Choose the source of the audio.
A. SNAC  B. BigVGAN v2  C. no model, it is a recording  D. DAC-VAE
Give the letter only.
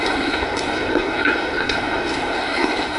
A